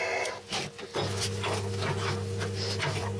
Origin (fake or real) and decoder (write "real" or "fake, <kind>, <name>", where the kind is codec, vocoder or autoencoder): real